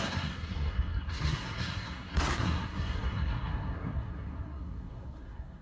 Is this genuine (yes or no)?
no